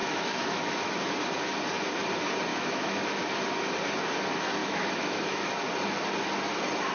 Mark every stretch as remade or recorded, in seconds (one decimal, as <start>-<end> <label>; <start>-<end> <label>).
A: 0.0-0.9 remade; 0.9-2.5 recorded; 2.5-3.2 remade; 3.2-4.6 recorded; 4.6-5.5 remade; 5.5-6.9 recorded